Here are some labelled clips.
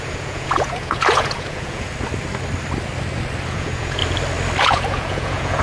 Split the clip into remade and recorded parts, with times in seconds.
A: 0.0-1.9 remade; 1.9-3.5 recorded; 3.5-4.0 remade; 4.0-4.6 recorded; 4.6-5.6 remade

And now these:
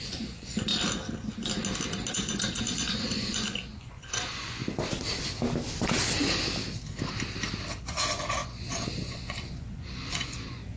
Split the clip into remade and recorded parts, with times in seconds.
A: 0.0-0.7 remade; 0.7-2.1 recorded; 2.1-4.6 remade; 4.6-7.8 recorded; 7.8-10.8 remade

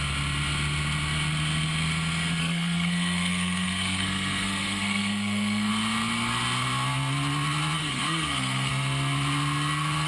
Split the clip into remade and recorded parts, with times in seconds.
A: 0.0-2.4 recorded; 2.4-5.7 remade; 5.7-7.8 recorded; 7.8-8.7 remade; 8.7-10.1 recorded

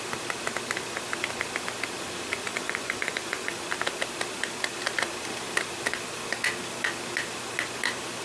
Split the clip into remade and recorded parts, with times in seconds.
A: 0.0-2.5 recorded; 2.5-3.6 remade; 3.6-8.2 recorded

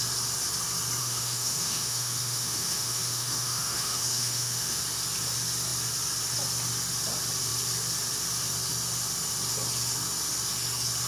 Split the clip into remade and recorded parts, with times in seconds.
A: 0.0-1.0 recorded; 1.0-4.8 remade; 4.8-11.1 recorded

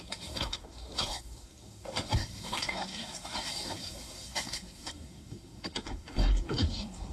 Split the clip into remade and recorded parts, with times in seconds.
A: 0.0-7.1 remade

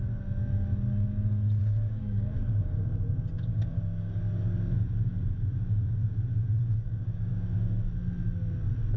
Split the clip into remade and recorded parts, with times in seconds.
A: 0.0-1.6 recorded; 1.6-2.8 remade; 2.8-3.5 recorded; 3.5-4.2 remade; 4.2-6.6 recorded; 6.6-7.3 remade; 7.3-9.0 recorded

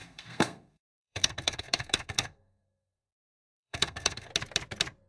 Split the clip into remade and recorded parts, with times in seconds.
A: 0.0-4.3 remade; 4.3-5.1 recorded